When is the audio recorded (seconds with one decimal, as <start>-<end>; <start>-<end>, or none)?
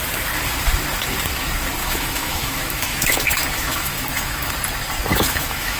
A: 0.0-1.8; 4.5-5.1